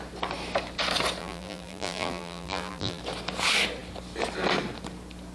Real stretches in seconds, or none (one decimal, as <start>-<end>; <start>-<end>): 0.0-1.2; 3.0-5.3